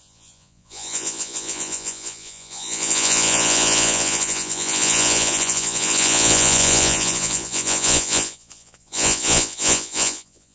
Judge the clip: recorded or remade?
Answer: remade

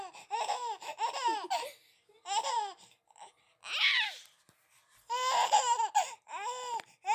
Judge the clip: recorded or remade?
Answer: recorded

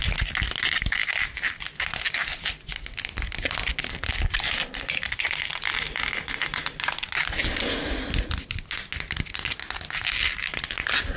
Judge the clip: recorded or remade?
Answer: recorded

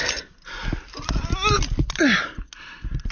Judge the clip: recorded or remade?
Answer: recorded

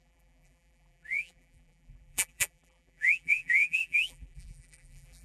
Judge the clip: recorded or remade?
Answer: remade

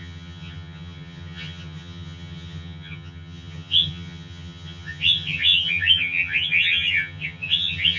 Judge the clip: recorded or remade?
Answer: remade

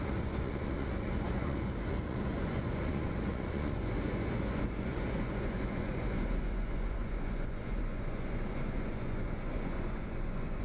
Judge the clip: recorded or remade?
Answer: remade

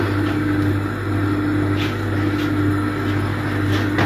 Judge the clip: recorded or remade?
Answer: recorded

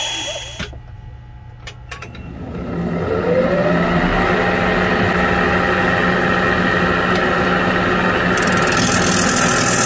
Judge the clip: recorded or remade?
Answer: recorded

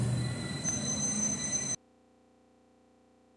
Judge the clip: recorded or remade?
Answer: recorded